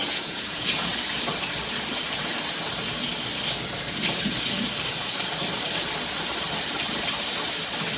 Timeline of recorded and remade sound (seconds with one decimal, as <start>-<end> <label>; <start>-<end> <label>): 0.0-0.9 remade; 0.9-8.0 recorded